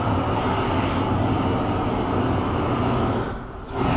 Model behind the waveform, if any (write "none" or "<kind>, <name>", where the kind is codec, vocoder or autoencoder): none